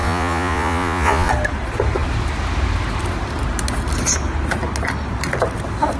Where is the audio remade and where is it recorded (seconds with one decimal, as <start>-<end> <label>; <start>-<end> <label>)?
0.0-1.3 remade; 1.3-6.0 recorded